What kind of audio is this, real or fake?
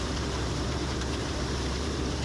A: fake